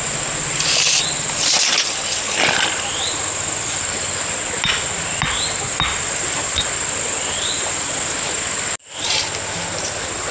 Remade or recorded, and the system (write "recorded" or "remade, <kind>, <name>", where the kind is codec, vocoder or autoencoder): recorded